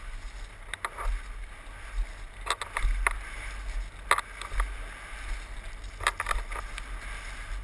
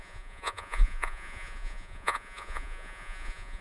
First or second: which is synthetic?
second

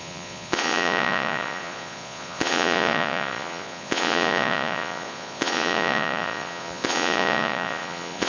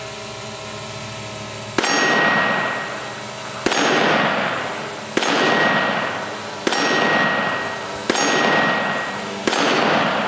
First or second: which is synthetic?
first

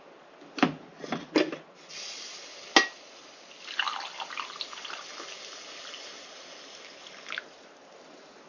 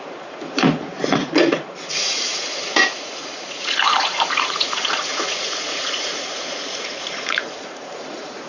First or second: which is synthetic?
second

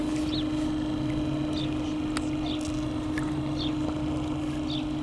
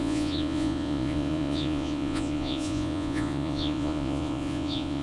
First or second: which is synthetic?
second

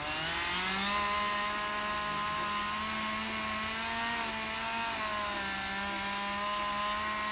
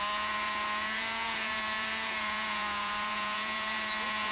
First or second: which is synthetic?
second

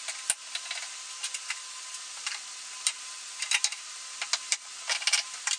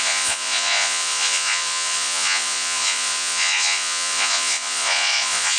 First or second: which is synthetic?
second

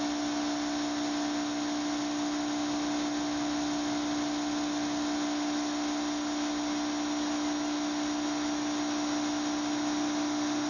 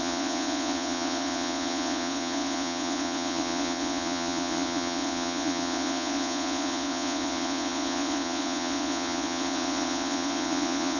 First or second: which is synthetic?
second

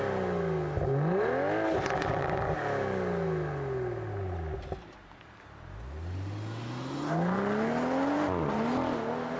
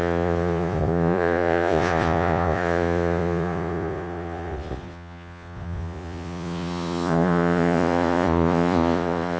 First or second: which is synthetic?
second